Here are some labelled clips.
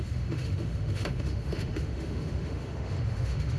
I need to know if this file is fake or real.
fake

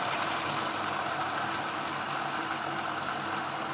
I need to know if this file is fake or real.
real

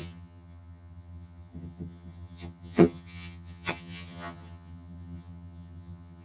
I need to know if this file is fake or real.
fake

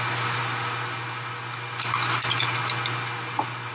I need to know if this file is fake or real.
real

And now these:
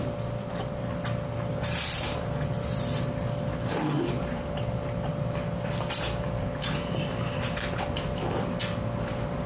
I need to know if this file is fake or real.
real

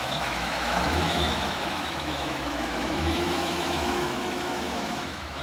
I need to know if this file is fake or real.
fake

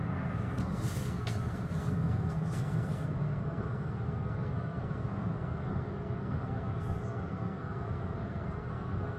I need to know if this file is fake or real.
fake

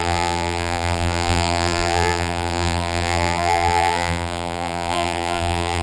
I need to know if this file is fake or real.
fake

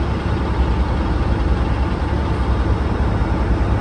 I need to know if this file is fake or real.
real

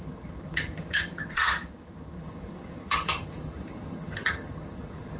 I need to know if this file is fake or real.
fake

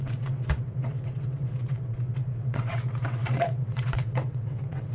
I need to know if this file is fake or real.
fake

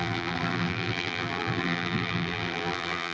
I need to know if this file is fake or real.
fake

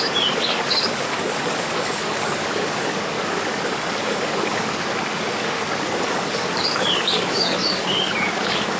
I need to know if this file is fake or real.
fake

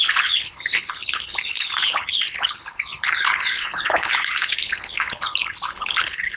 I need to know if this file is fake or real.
fake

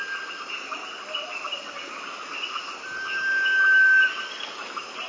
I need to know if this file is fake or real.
real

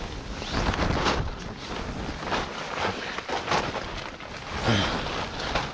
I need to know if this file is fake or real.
real